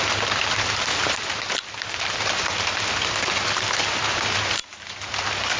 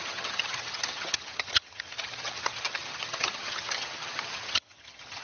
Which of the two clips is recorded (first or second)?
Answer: first